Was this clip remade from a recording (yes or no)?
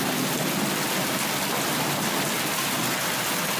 no